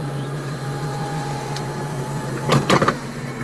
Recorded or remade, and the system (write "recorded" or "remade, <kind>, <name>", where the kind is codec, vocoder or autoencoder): remade, vocoder, Vocos